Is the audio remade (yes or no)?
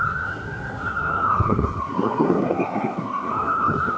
yes